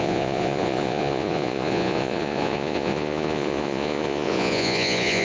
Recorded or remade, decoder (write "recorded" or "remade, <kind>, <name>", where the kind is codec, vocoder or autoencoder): remade, vocoder, Vocos